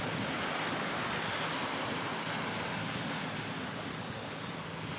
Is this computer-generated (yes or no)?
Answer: no